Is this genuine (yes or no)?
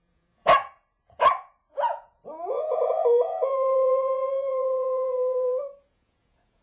no